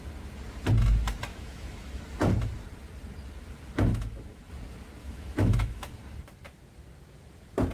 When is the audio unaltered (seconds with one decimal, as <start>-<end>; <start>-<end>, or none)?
0.0-1.3; 2.0-3.9; 4.5-5.0; 5.9-7.7